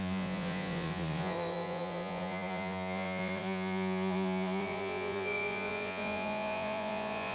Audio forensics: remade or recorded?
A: remade